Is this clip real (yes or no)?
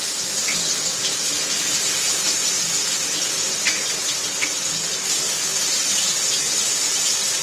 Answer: yes